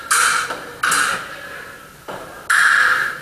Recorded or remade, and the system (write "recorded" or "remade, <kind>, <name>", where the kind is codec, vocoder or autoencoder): recorded